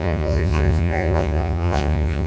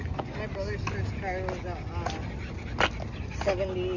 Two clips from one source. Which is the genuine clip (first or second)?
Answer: second